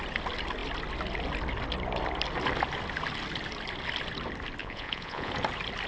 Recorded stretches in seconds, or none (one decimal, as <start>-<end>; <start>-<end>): 0.0-4.6; 5.3-5.9

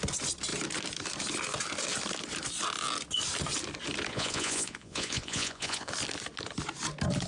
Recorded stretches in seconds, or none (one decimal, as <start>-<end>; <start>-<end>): 0.0-4.1; 5.9-7.3

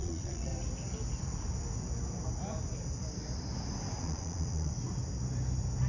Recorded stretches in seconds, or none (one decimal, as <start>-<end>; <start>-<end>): 0.5-4.0; 4.7-5.9

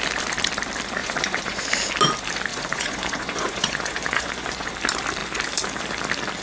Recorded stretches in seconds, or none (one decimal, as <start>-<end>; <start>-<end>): 0.0-1.0; 1.6-2.5; 4.7-6.4